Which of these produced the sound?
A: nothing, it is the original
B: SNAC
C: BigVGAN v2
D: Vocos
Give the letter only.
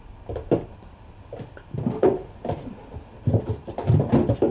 A